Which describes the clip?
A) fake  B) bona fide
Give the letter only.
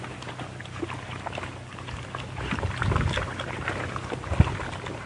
B